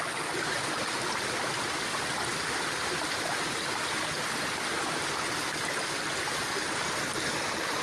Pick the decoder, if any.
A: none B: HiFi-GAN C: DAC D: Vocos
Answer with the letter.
A